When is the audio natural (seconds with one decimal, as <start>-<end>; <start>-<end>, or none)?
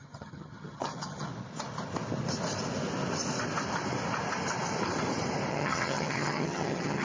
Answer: 1.3-5.5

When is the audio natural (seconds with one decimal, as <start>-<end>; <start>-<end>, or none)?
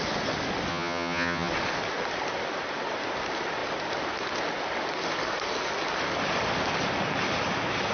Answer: 0.0-0.7; 1.5-7.9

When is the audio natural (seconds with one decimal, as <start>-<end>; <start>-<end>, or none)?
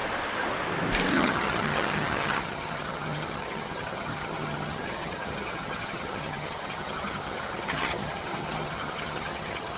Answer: 0.0-1.1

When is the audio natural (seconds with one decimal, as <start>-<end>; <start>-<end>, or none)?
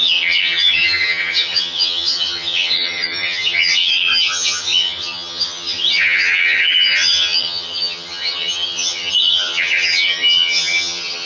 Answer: none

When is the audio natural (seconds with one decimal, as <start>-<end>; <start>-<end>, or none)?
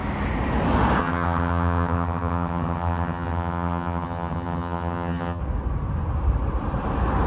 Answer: 0.0-1.0; 5.4-7.3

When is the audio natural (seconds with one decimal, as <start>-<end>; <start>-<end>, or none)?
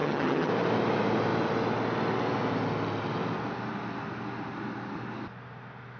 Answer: 0.5-6.0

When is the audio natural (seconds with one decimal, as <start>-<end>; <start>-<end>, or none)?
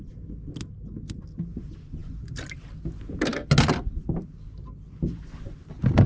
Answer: 0.0-6.1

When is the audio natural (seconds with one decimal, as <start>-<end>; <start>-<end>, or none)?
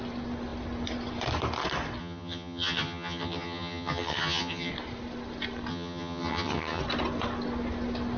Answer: 0.0-2.0; 4.7-5.7; 6.8-8.2